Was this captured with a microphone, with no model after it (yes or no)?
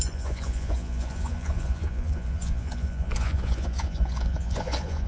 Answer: no